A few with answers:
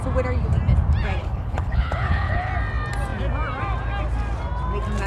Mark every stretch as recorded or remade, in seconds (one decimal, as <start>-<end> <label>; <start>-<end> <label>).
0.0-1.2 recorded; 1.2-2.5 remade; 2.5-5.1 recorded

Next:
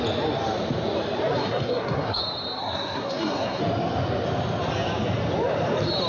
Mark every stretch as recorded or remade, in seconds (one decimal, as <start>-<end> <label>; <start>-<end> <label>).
0.0-1.4 recorded; 1.4-2.2 remade; 2.2-2.6 recorded; 2.6-3.6 remade; 3.6-6.1 recorded

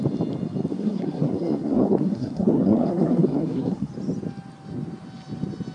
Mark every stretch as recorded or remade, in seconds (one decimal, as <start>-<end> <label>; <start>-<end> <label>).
0.0-0.7 recorded; 0.7-3.9 remade; 3.9-5.7 recorded

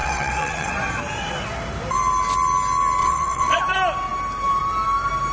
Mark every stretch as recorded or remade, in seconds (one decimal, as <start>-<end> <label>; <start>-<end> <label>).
0.0-0.7 remade; 0.7-3.0 recorded; 3.0-3.6 remade; 3.6-5.3 recorded

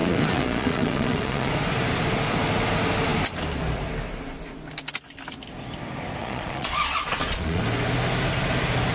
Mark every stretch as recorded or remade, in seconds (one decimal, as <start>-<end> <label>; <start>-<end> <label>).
0.0-1.5 remade; 1.5-6.2 recorded; 6.2-7.6 remade; 7.6-8.9 recorded